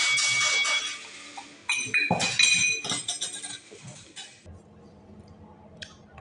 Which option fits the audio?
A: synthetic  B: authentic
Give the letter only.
B